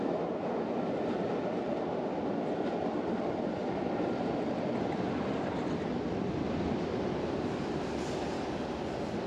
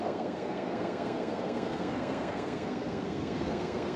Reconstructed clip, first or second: second